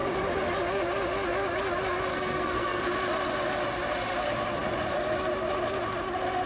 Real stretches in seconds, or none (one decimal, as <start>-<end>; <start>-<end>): 0.0-2.1; 2.8-6.5